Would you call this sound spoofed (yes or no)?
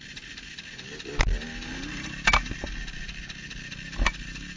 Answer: no